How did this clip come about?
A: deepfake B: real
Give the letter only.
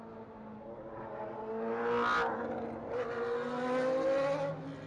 B